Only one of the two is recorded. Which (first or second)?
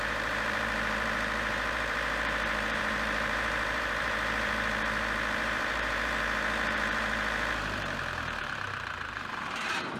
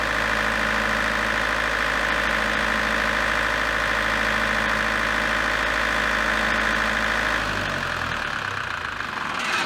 second